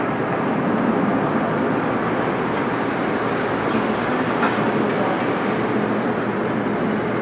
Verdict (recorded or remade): recorded